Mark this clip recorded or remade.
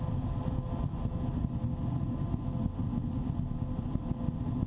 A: recorded